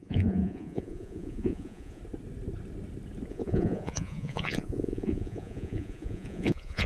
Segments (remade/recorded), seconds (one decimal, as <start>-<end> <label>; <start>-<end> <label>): 0.0-2.0 remade; 2.0-3.3 recorded; 3.3-6.9 remade